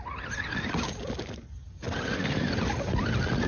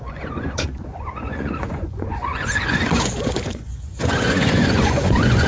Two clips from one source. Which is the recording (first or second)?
first